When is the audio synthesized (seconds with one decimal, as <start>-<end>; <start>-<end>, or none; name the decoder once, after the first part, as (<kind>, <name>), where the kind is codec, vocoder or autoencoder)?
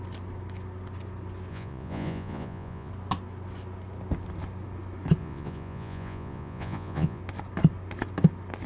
1.5-2.9 (vocoder, Vocos); 5.2-7.2